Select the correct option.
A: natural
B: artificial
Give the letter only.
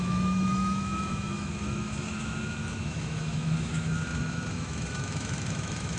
B